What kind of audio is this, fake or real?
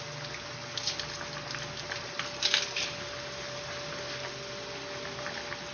real